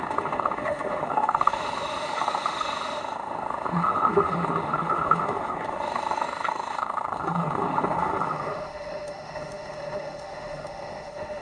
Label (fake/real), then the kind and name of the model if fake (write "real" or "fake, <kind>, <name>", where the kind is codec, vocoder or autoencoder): fake, autoencoder, DAC-VAE